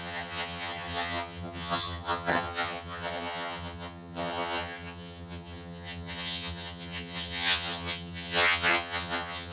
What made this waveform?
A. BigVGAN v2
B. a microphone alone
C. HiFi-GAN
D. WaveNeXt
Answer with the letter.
C